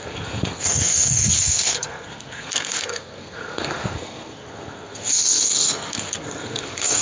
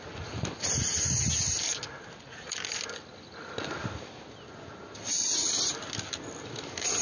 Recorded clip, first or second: second